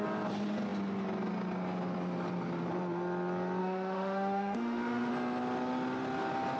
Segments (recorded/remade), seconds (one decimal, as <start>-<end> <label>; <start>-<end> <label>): 0.0-3.6 recorded; 3.6-5.1 remade; 5.1-6.6 recorded